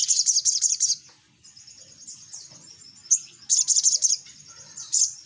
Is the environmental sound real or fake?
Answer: real